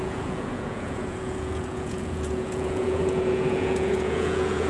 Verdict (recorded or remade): remade